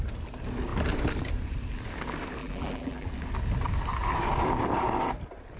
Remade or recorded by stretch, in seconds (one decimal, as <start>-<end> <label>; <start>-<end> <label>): 0.0-2.4 recorded; 2.4-3.1 remade; 3.1-5.6 recorded

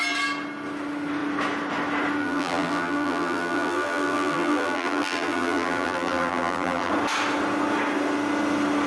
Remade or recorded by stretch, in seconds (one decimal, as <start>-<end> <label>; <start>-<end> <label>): 0.0-2.2 recorded; 2.2-6.9 remade; 6.9-8.9 recorded

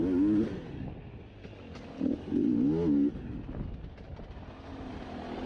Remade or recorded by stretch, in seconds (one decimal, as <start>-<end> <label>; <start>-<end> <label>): 0.0-5.5 recorded

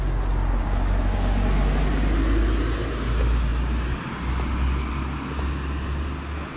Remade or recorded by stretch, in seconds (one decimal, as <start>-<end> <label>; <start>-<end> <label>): 0.0-6.6 recorded

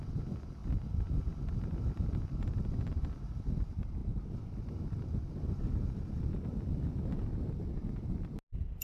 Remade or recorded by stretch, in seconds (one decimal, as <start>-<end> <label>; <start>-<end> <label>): 0.0-8.8 recorded

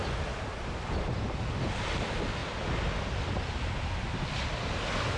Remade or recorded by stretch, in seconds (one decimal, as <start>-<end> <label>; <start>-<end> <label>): 0.0-5.2 recorded